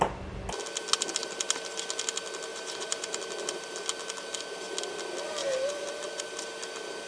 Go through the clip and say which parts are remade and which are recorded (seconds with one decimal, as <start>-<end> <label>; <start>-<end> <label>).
0.0-2.5 recorded; 2.5-3.2 remade; 3.2-5.4 recorded; 5.4-6.2 remade; 6.2-7.1 recorded